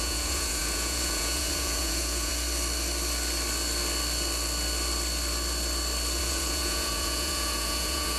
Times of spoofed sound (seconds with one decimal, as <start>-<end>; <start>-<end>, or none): 0.0-2.3; 6.2-8.2